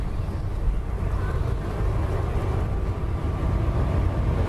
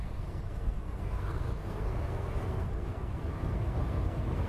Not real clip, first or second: second